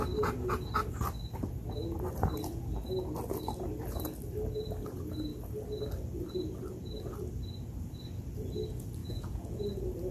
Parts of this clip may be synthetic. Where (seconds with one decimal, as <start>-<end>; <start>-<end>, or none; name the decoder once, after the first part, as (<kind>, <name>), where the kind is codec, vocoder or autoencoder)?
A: 9.0-9.6 (vocoder, Vocos)